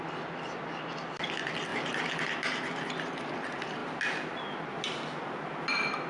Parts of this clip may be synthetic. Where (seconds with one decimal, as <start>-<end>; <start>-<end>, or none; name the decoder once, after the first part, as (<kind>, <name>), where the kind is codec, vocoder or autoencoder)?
none